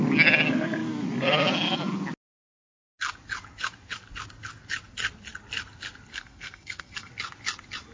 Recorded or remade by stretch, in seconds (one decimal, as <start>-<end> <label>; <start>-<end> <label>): 0.0-6.1 recorded; 6.1-7.1 remade; 7.1-7.9 recorded